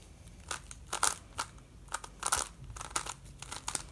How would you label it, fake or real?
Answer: real